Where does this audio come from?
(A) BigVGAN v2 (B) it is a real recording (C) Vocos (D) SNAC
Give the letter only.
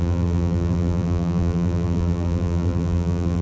A